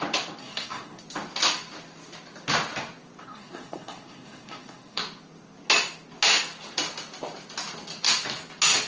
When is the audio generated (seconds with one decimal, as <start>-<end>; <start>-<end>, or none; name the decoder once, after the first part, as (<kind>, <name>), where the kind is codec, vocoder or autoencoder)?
0.4-1.0 (codec, SNAC); 3.2-5.0